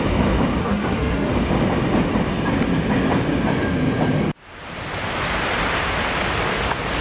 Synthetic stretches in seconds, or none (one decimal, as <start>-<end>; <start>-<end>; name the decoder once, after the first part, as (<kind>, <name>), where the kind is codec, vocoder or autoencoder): 0.6-1.3 (codec, SNAC)